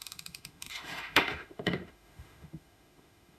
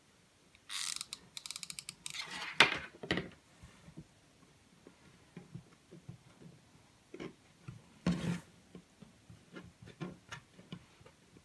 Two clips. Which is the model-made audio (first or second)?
first